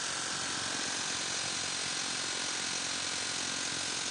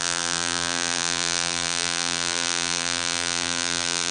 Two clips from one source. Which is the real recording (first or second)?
first